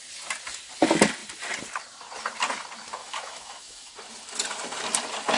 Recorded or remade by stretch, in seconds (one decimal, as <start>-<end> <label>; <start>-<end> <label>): 0.0-3.0 recorded; 3.0-3.9 remade; 3.9-5.4 recorded